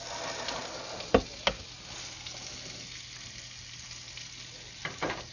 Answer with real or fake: real